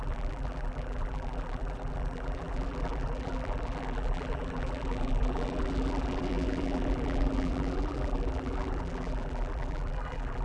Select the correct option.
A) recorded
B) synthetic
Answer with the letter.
B